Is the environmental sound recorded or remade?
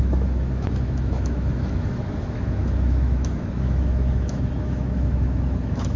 remade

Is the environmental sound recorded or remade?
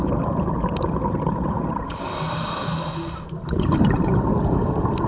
recorded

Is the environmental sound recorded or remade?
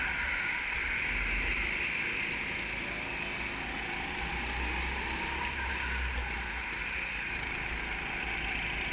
recorded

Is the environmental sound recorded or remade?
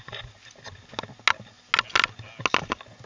recorded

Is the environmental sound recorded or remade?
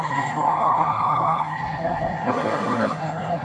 remade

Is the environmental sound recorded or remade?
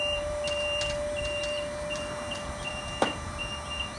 remade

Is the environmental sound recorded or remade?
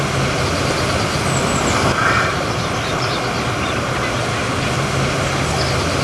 recorded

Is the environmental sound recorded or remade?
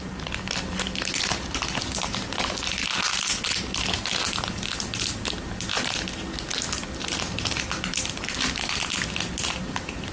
recorded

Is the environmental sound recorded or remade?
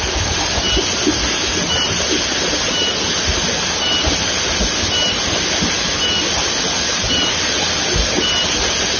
recorded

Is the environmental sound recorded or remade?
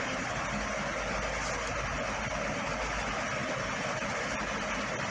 recorded